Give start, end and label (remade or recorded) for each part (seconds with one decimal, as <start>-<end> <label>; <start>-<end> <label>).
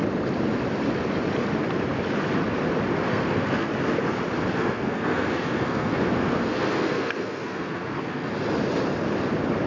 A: 0.0-3.1 recorded; 3.1-3.7 remade; 3.7-4.5 recorded; 4.5-8.3 remade; 8.3-9.7 recorded